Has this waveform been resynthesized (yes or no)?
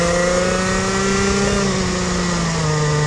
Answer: no